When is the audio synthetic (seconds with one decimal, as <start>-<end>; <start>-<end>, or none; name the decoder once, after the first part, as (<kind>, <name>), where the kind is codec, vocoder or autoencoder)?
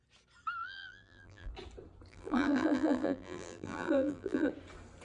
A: 0.6-1.5 (vocoder, BigVGAN v2); 2.1-4.5